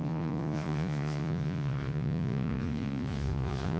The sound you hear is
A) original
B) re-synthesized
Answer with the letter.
B